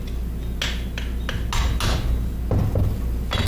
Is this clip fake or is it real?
real